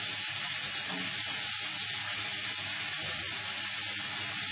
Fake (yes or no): no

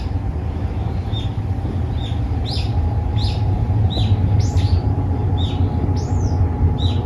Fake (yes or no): no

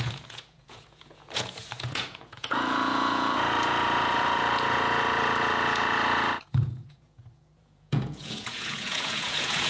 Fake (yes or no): yes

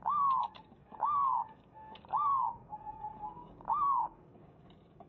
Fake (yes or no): yes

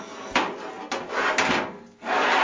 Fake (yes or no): no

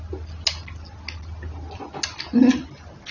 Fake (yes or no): no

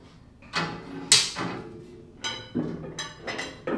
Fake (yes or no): no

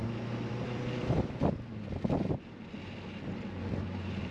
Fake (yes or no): yes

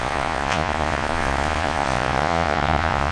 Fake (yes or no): yes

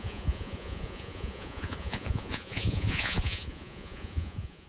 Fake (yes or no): yes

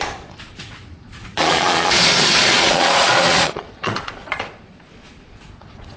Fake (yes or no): yes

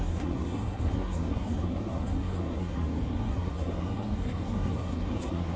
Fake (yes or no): yes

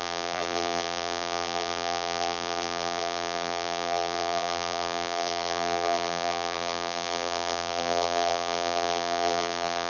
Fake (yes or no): yes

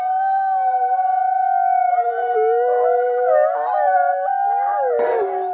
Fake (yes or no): no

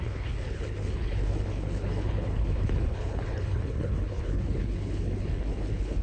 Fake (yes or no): yes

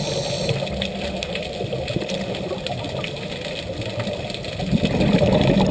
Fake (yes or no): no